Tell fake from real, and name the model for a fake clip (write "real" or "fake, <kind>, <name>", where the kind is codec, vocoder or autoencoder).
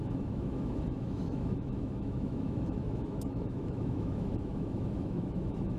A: fake, autoencoder, DAC-VAE